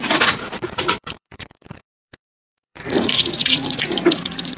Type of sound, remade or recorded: remade